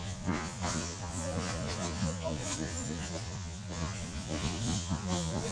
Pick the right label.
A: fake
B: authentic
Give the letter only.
A